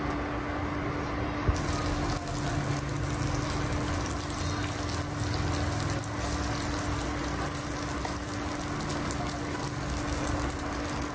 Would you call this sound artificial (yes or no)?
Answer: no